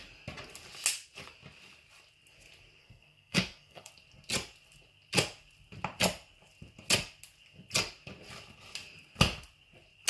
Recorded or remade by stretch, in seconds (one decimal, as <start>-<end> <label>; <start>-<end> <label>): 0.0-2.8 recorded; 2.8-3.9 remade; 3.9-10.1 recorded